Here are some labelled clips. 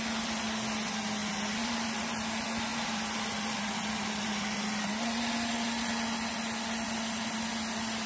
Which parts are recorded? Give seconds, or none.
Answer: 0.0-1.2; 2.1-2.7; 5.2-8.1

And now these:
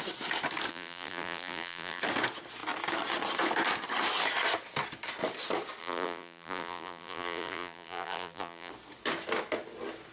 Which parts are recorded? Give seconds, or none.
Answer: 0.0-0.7; 2.0-5.8; 8.7-10.1

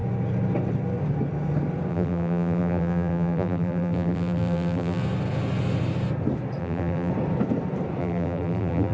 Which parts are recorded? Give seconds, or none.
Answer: 0.0-1.9; 5.0-6.6; 7.1-8.0

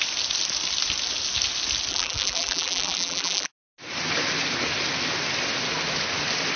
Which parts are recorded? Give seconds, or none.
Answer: 0.0-1.9; 3.5-6.6

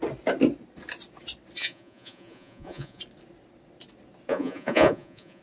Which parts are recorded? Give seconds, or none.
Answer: 0.0-1.6; 3.0-4.3

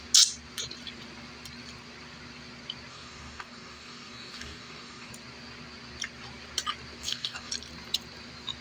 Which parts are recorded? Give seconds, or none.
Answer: 0.0-2.9; 5.1-7.0; 7.5-8.6

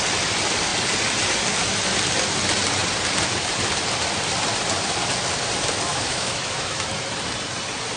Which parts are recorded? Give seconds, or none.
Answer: 0.0-5.9; 6.9-8.0